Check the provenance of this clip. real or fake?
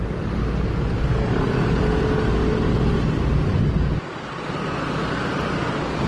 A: real